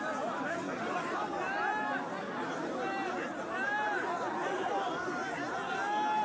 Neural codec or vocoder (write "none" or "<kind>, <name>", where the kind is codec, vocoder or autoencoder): none